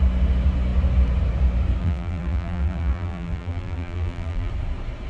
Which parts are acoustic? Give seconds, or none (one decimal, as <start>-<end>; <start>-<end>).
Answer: 0.0-1.8; 4.5-5.1